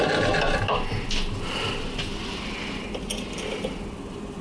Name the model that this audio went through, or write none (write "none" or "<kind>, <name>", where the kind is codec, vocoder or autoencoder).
none